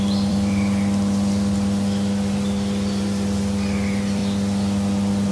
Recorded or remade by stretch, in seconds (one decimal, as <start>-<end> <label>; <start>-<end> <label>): 0.0-4.2 remade; 4.2-5.3 recorded